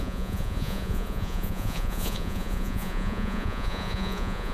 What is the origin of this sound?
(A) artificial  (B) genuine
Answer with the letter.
A